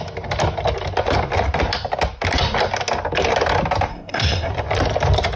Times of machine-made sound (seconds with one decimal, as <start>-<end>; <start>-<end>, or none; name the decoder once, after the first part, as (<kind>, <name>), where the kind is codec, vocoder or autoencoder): 3.9-4.5 (codec, SNAC)